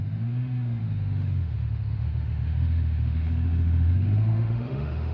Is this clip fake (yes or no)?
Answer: yes